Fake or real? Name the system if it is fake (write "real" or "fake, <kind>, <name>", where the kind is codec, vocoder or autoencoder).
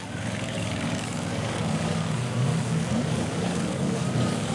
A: fake, codec, DAC